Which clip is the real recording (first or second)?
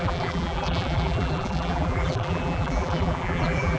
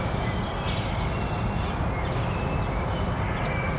second